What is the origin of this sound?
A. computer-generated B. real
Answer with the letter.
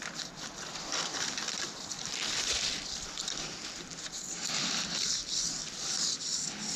B